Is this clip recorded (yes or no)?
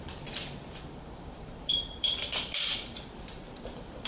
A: no